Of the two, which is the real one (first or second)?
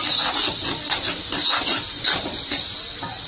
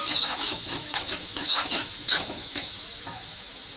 first